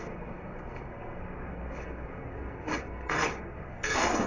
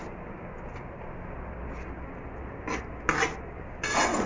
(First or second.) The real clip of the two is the second